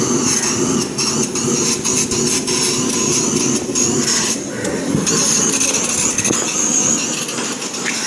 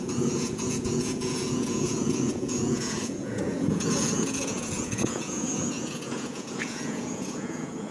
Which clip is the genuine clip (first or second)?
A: first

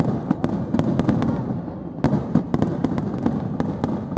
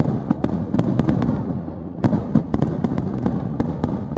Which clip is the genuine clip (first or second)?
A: first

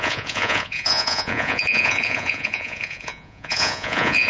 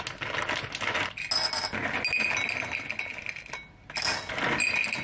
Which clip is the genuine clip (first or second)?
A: second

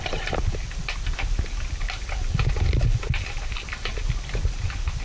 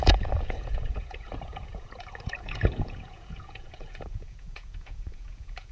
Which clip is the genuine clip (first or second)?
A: first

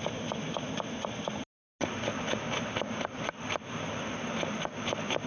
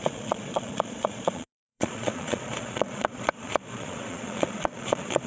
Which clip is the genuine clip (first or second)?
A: first